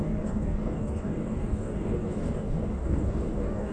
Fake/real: fake